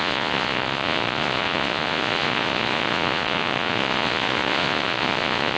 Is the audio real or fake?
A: fake